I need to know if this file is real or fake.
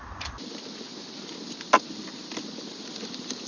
real